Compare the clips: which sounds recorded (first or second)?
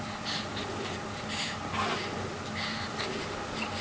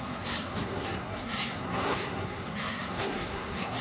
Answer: first